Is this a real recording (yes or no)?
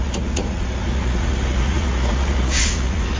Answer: no